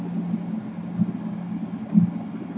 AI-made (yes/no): no